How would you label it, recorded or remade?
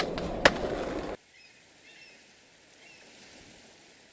recorded